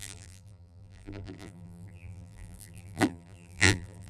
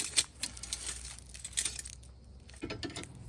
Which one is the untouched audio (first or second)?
second